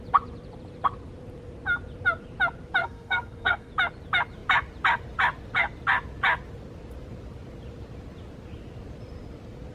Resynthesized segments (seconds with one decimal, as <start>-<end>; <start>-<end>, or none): 2.8-3.7